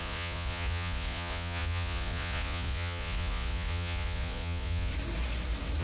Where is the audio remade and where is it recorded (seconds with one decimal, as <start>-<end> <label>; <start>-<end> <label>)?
0.0-4.9 remade; 4.9-5.8 recorded